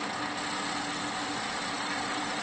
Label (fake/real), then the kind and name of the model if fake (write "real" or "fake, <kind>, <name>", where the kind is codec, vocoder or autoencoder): real